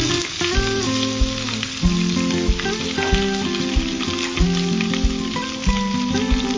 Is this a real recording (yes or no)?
yes